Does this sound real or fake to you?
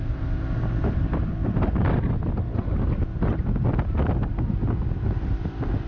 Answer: real